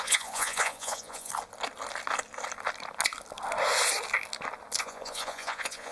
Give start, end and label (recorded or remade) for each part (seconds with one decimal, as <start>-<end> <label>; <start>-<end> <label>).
0.0-1.3 remade; 1.3-4.8 recorded; 4.8-5.9 remade

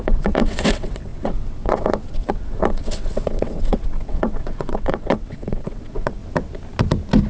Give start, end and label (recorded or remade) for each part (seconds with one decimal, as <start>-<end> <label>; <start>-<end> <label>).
0.0-6.2 remade; 6.2-7.3 recorded